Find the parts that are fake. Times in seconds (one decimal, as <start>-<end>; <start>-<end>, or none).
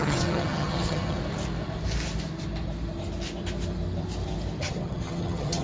0.0-1.2; 4.6-5.6